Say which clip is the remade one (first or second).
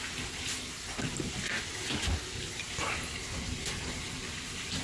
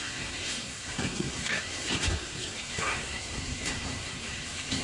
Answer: second